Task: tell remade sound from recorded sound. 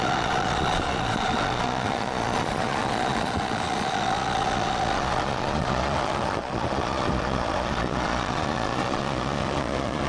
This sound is remade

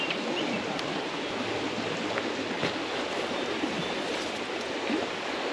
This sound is recorded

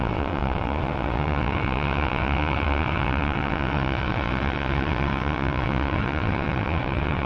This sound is remade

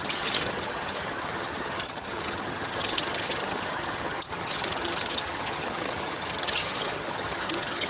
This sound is remade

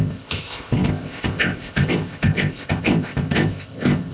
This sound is remade